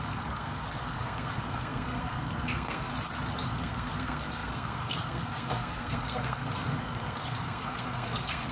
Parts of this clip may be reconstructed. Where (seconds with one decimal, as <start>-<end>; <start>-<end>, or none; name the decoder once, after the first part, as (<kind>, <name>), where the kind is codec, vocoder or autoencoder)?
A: 0.0-2.9 (codec, SNAC); 3.5-8.5

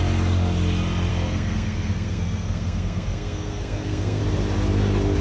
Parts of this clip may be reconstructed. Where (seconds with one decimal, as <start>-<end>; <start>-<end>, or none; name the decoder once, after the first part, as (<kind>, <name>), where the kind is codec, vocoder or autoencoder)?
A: 1.1-4.2 (codec, SNAC)

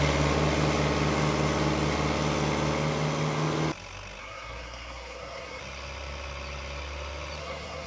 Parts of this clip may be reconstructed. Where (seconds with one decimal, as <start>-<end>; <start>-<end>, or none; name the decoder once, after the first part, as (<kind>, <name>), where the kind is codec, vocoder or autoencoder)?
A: 4.2-5.6 (codec, SNAC); 7.4-7.9

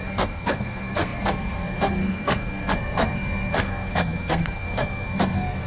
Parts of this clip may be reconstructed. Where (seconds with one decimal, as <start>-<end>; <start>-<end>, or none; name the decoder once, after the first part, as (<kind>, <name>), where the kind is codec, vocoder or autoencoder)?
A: 0.0-5.7 (codec, SNAC)

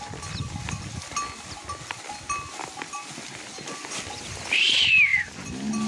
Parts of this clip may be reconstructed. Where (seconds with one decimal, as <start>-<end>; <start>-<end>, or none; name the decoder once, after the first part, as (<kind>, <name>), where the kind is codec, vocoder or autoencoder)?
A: none

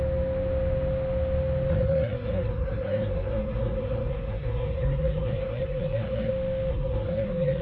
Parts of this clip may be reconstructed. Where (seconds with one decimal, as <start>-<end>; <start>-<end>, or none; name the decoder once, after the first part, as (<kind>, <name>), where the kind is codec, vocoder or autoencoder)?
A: 1.7-6.3 (codec, SNAC); 6.7-7.6

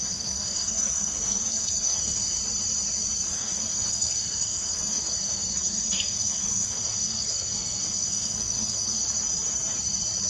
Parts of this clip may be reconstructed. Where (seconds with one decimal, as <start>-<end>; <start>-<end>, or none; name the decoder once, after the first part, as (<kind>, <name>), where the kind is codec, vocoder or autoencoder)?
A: 0.0-2.4 (codec, SNAC); 3.3-9.0